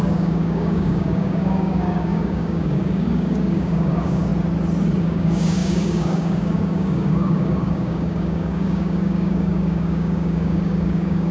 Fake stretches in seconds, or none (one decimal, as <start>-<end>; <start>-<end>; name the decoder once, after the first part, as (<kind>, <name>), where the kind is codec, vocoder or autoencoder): 0.0-4.3 (codec, DAC); 5.0-11.3